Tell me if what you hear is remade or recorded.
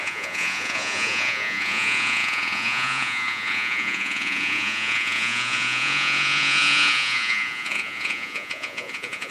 remade